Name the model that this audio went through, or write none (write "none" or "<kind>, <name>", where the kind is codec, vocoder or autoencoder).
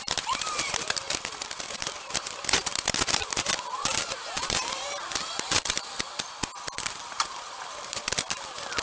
vocoder, BigVGAN v2